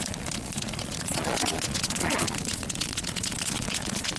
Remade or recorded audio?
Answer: remade